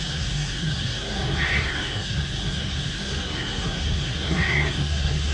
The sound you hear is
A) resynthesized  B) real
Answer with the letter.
A